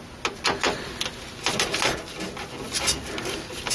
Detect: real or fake real